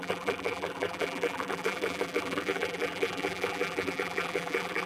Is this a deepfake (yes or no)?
yes